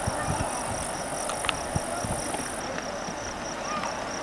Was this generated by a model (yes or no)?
no